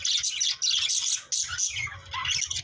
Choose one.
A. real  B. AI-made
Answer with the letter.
A